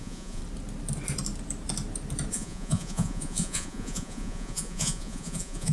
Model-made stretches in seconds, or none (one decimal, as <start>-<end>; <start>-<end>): 0.0-0.4; 2.3-5.7